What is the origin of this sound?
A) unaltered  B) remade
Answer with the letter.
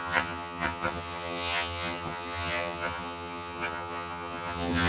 B